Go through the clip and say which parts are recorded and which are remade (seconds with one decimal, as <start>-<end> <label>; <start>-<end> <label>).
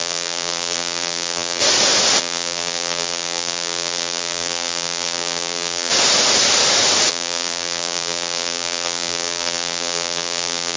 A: 0.0-1.6 remade; 1.6-2.2 recorded; 2.2-5.9 remade; 5.9-7.1 recorded; 7.1-10.8 remade